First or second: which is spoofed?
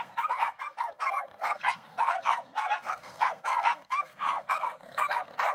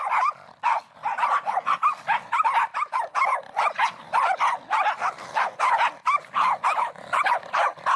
first